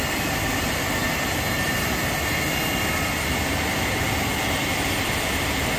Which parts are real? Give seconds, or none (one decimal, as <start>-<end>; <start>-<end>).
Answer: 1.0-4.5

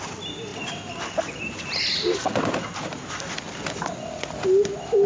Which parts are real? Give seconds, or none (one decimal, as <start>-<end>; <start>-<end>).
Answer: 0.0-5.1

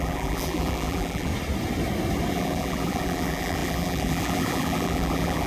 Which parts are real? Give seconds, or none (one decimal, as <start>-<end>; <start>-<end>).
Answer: 1.3-2.3